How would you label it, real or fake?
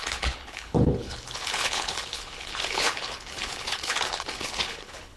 fake